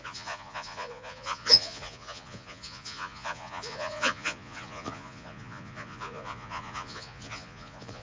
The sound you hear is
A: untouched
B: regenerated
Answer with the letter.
B